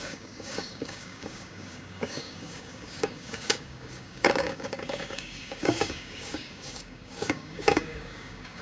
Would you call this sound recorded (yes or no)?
no